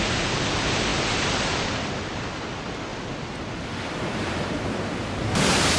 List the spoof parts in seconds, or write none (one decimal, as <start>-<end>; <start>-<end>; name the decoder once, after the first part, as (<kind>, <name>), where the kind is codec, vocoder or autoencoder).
2.9-4.9 (vocoder, BigVGAN v2)

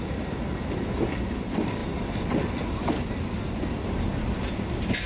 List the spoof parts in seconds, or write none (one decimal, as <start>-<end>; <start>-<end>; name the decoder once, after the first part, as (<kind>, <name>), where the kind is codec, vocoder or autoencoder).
none

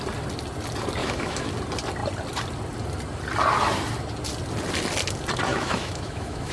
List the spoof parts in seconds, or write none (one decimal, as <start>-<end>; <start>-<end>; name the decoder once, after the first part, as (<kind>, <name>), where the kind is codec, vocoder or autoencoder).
1.0-1.5 (autoencoder, DAC-VAE); 5.5-6.5

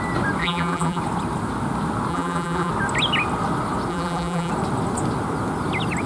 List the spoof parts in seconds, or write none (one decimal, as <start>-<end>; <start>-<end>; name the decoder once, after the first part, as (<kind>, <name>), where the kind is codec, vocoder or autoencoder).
0.4-1.0 (vocoder, BigVGAN v2); 2.1-2.7; 3.9-4.5

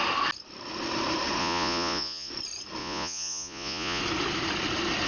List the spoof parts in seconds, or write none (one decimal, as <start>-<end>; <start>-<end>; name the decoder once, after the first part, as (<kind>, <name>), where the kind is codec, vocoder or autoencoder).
1.4-2.3 (vocoder, Vocos); 2.8-4.0

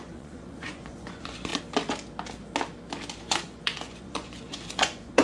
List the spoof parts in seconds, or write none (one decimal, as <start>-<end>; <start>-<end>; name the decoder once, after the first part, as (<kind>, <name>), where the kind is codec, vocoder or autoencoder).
0.0-1.5 (vocoder, Vocos); 3.2-5.2

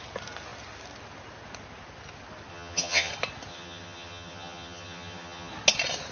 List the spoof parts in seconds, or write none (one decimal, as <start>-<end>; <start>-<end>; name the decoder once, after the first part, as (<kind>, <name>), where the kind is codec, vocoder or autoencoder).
2.5-3.1 (vocoder, HiFi-GAN); 3.5-5.5